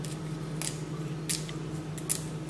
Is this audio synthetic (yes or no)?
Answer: no